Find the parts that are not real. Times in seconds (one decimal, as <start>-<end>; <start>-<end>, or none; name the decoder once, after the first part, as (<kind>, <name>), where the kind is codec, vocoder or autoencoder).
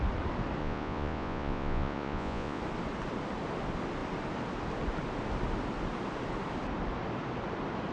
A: 0.6-2.6 (vocoder, Vocos)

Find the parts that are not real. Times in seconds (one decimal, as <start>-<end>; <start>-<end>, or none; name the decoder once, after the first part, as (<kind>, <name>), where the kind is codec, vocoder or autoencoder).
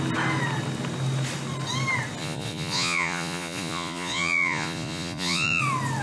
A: 2.2-5.6 (vocoder, Vocos)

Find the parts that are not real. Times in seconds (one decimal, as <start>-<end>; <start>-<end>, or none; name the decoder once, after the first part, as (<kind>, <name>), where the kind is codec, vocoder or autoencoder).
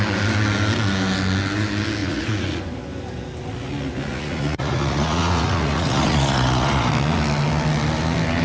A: 2.0-2.6 (vocoder, Vocos); 4.1-6.9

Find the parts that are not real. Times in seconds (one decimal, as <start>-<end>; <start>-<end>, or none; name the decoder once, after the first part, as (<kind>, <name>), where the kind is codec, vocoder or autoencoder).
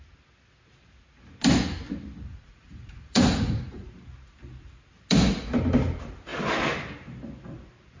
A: 2.3-3.9 (vocoder, Vocos)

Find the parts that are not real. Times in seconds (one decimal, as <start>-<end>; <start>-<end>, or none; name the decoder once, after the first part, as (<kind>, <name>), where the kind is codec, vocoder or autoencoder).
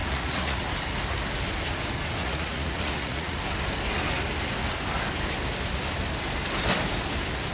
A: 0.0-0.7 (vocoder, Vocos); 2.2-3.4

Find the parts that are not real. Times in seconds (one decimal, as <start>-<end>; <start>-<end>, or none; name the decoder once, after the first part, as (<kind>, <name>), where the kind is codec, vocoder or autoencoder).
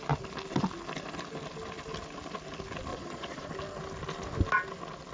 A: 2.9-3.5 (vocoder, Vocos)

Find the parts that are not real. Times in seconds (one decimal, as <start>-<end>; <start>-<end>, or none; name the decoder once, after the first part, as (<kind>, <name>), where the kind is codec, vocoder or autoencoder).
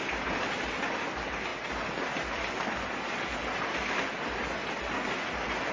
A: none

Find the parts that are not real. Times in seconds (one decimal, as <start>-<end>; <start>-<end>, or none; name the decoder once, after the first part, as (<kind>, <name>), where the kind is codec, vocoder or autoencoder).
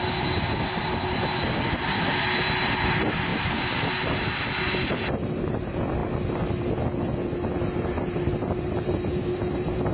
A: none